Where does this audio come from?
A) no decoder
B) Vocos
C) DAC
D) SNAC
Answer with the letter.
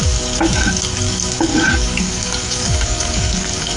C